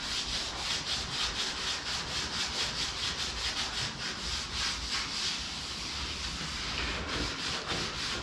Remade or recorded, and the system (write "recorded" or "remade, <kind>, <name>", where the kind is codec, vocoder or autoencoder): recorded